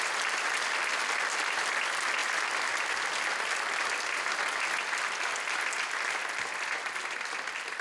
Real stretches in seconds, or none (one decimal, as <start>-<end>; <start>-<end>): 0.0-7.8

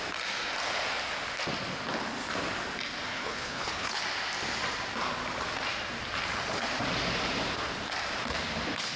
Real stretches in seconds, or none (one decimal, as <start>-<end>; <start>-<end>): 0.0-3.1; 4.0-9.0

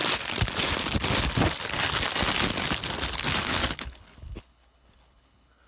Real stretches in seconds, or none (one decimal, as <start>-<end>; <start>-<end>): 0.0-3.4

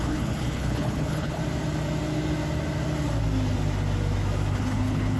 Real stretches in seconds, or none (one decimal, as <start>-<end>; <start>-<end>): 1.4-4.5

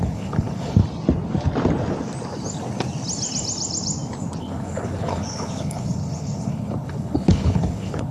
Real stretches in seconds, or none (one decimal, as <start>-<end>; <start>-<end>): 0.8-4.4

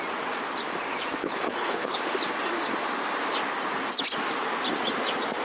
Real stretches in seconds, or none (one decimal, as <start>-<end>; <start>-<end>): 0.0-1.2; 2.0-5.4

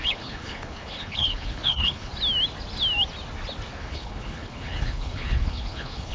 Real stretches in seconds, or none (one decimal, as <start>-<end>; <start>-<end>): 2.1-3.7

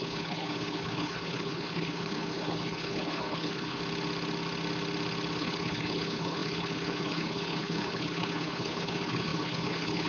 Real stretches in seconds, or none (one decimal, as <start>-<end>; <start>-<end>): 3.8-5.4